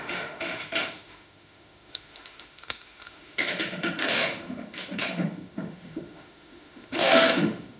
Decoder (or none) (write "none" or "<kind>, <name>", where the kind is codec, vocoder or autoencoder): autoencoder, DAC-VAE